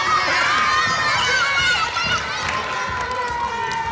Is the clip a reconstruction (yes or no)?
no